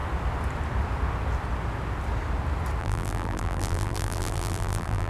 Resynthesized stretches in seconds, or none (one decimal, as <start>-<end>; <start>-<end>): 2.8-5.1